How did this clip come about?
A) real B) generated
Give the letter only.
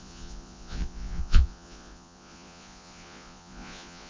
B